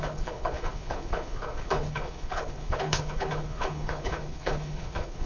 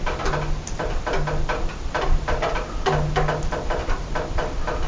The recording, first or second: second